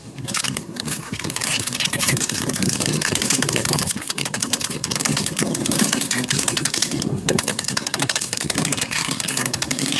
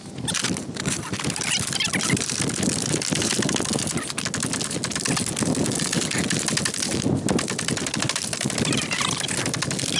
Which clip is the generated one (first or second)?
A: first